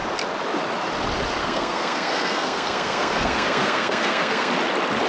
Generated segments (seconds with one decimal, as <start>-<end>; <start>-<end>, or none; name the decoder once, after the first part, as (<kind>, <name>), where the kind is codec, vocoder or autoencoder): 1.4-4.5 (codec, SNAC)